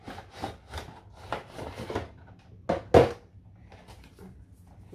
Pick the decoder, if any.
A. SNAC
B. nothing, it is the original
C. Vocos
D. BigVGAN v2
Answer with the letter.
B